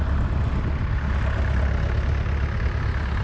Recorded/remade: recorded